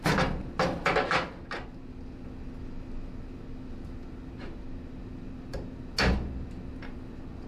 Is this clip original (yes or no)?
yes